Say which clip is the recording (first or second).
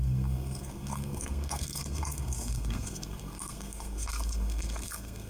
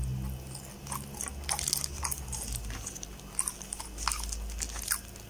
second